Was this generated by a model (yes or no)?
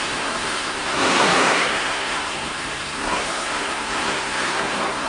yes